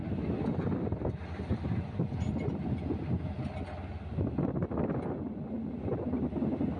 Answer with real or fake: real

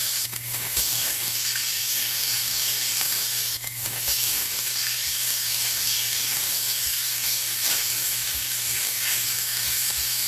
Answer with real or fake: fake